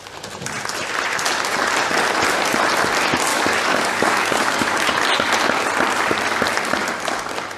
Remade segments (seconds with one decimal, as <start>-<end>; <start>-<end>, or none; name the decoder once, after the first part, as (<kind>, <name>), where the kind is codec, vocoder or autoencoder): 3.3-4.9 (codec, DAC)